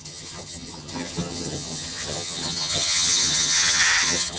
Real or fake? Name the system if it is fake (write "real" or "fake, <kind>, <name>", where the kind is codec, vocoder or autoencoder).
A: fake, vocoder, HiFi-GAN